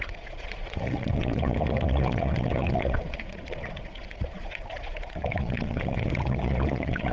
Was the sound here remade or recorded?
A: remade